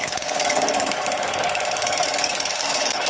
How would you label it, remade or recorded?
remade